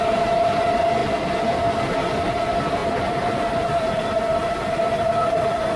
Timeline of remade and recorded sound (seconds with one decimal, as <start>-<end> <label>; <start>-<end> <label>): 0.0-2.8 recorded; 2.8-5.8 remade